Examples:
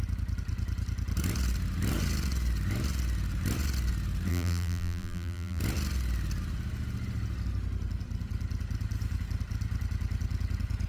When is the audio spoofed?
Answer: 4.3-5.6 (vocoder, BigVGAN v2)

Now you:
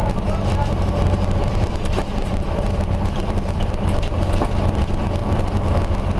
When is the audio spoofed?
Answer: 0.0-3.7 (vocoder, BigVGAN v2); 5.2-5.7

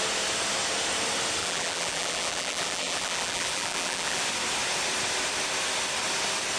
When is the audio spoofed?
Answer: 1.4-4.2 (vocoder, BigVGAN v2)